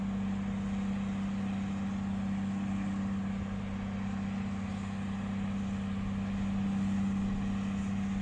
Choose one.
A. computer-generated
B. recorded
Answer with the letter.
B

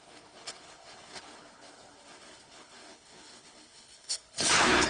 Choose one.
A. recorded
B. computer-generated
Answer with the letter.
B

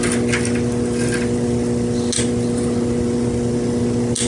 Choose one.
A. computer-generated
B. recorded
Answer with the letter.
B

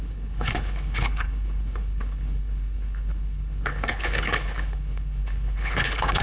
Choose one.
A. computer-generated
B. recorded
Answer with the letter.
A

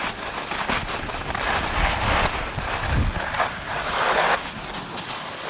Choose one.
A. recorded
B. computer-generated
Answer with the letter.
A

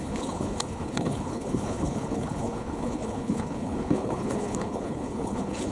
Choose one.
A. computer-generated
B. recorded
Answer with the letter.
A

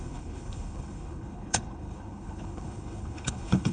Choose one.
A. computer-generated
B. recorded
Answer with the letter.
A